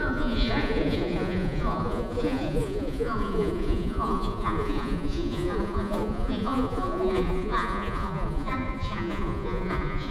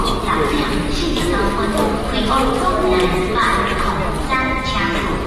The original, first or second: second